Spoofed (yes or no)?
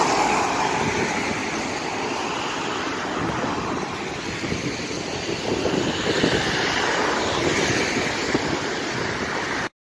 no